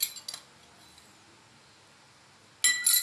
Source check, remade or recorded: recorded